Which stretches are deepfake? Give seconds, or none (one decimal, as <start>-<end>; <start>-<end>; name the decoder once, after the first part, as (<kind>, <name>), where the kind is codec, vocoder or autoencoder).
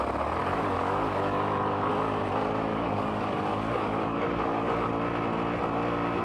0.4-1.9 (codec, DAC); 2.7-4.9